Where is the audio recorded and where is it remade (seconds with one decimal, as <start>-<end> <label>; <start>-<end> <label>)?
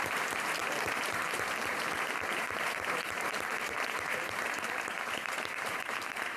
0.0-6.4 remade